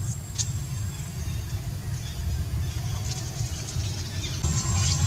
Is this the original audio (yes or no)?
yes